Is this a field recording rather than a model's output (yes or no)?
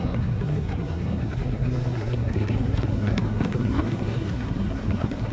no